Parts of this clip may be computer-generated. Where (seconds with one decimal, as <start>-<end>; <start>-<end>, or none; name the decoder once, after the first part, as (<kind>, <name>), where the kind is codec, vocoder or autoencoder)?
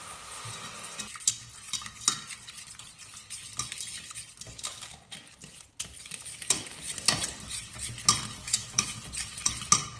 8.4-9.0 (autoencoder, DAC-VAE)